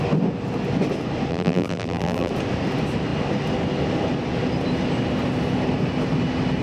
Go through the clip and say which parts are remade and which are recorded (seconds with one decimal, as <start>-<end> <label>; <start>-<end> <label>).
0.0-1.3 recorded; 1.3-2.3 remade; 2.3-6.6 recorded